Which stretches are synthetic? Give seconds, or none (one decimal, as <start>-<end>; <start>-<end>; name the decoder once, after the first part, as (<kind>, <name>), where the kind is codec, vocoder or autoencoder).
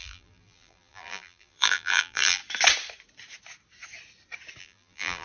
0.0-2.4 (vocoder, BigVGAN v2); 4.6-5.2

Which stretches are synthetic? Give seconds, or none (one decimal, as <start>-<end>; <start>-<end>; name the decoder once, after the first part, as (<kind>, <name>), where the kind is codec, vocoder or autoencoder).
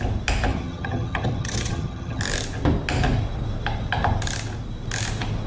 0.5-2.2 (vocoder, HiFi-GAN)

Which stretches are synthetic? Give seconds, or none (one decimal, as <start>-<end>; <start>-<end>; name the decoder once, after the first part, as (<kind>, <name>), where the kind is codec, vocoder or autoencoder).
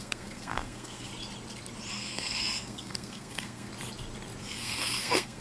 0.0-1.1 (codec, SNAC); 1.9-3.7; 4.4-5.4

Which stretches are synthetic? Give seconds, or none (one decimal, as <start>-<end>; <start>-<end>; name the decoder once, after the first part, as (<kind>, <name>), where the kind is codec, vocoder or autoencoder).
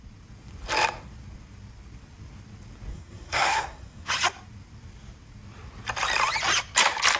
2.9-4.1 (codec, SNAC)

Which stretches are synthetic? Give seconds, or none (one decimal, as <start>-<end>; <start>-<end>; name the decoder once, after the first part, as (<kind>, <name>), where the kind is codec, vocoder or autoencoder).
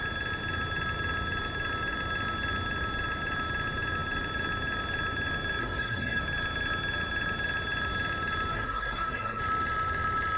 5.6-6.2 (codec, SNAC); 8.5-9.4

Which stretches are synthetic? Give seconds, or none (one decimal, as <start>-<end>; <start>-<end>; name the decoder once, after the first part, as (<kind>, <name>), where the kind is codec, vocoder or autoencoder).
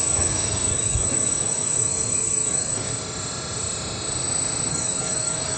0.0-2.9 (codec, DAC); 4.7-5.6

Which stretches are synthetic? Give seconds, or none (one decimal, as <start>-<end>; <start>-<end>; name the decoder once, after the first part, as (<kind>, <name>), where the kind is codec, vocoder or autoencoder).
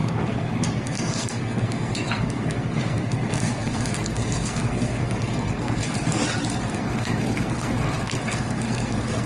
0.0-6.2 (codec, SNAC); 6.7-9.3